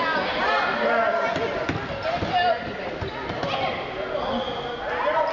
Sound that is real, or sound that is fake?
real